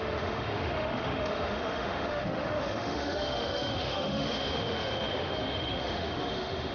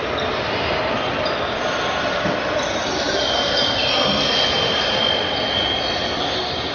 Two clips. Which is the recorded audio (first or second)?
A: second